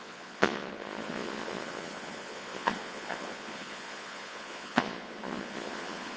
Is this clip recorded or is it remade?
remade